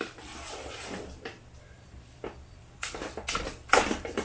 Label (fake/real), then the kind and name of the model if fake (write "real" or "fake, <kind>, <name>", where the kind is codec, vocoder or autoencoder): fake, vocoder, BigVGAN v2